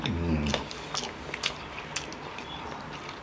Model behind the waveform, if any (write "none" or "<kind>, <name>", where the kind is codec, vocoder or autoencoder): none